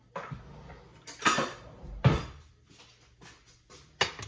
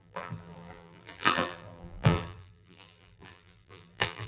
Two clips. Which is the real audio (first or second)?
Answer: first